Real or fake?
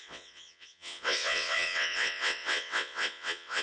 fake